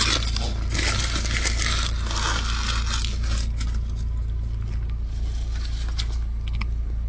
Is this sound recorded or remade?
recorded